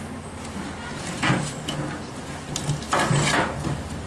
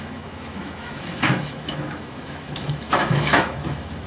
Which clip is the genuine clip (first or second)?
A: first